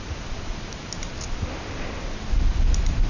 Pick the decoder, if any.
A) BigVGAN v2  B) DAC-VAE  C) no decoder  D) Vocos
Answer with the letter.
C